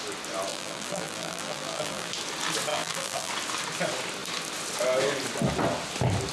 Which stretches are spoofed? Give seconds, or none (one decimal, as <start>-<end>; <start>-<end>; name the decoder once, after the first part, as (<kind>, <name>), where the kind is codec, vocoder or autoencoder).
0.5-2.1 (vocoder, BigVGAN v2); 2.7-3.3